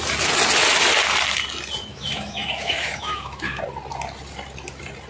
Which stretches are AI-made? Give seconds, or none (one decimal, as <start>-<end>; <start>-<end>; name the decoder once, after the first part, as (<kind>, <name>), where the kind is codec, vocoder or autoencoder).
1.9-3.6 (autoencoder, DAC-VAE)